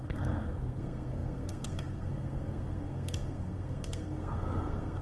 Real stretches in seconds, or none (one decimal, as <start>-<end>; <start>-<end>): none